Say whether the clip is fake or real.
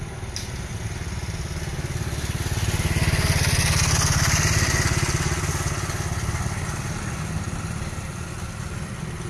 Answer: real